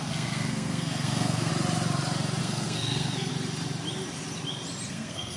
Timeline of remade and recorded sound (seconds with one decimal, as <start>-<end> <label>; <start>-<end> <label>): 0.0-1.5 remade; 1.5-2.4 recorded; 2.4-3.3 remade; 3.3-4.9 recorded; 4.9-5.4 remade